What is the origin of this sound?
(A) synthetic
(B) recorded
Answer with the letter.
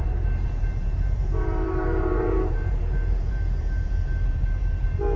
A